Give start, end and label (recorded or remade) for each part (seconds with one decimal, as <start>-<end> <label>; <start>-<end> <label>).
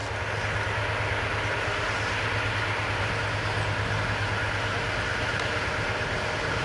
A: 0.0-6.6 recorded